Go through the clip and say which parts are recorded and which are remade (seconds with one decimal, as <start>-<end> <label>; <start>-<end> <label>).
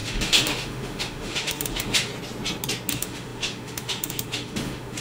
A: 0.0-2.1 remade; 2.1-2.9 recorded; 2.9-5.0 remade